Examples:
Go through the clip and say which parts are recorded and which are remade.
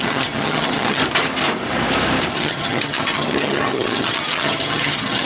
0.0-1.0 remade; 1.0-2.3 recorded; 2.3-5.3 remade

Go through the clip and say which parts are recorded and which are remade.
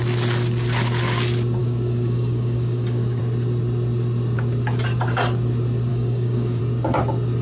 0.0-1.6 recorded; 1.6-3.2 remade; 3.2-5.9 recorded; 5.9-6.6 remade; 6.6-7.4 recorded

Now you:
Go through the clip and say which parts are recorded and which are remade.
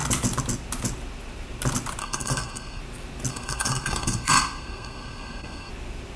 0.0-2.0 recorded; 2.0-2.8 remade; 2.8-3.3 recorded; 3.3-5.7 remade; 5.7-6.2 recorded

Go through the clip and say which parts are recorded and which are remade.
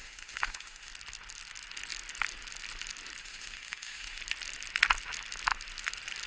0.0-0.9 remade; 0.9-3.2 recorded; 3.2-4.2 remade; 4.2-6.3 recorded